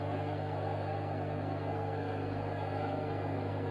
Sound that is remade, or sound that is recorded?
remade